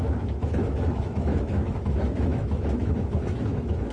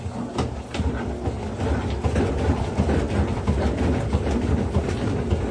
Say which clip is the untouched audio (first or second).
second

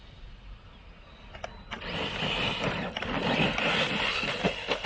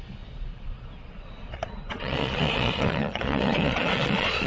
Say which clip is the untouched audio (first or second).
first